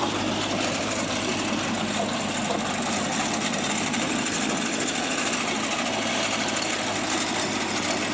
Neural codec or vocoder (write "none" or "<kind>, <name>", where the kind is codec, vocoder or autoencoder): vocoder, BigVGAN v2